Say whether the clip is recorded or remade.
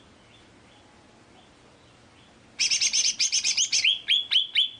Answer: recorded